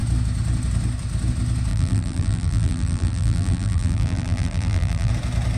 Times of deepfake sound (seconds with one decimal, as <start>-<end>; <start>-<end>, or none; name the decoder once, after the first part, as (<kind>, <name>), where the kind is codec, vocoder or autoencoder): 1.7-5.1 (vocoder, BigVGAN v2)